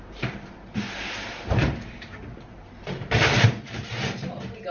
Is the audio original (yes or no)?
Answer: no